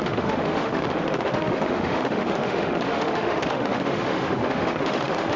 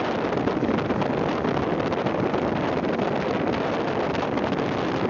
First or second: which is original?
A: second